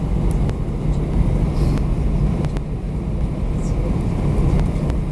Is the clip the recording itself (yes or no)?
yes